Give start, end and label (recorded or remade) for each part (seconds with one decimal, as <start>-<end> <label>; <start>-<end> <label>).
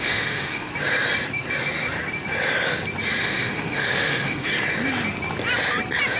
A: 0.0-0.7 remade; 0.7-3.2 recorded; 3.2-4.5 remade; 4.5-6.2 recorded